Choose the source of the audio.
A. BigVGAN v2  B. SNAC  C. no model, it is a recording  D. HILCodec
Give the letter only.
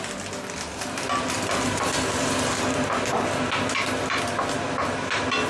C